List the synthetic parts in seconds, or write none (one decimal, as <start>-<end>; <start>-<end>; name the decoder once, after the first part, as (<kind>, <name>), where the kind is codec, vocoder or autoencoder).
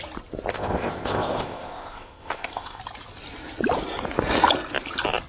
0.5-2.8 (codec, ZipCodec)